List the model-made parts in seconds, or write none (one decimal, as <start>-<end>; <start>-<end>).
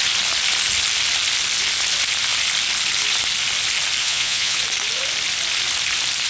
4.0-4.6